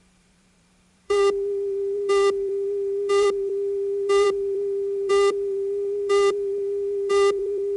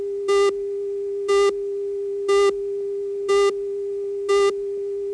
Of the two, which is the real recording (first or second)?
second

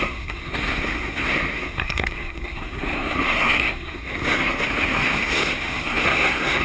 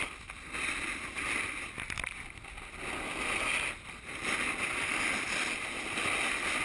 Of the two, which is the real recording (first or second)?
second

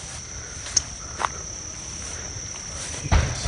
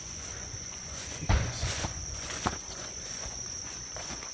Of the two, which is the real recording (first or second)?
first